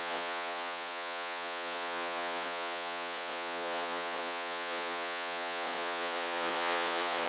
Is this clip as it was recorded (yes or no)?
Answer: no